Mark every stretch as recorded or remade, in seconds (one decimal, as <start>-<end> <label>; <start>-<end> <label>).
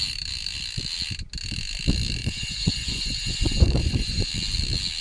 0.0-2.2 recorded; 2.2-4.3 remade; 4.3-5.0 recorded